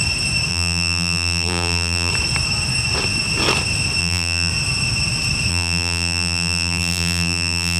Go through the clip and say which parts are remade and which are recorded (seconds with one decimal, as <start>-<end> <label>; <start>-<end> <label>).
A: 0.0-0.5 recorded; 0.5-2.1 remade; 2.1-4.0 recorded; 4.0-4.5 remade; 4.5-5.5 recorded; 5.5-7.8 remade